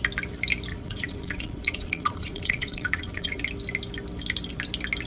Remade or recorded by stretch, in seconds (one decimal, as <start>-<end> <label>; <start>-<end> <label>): 0.0-0.7 recorded; 0.7-3.4 remade; 3.4-5.1 recorded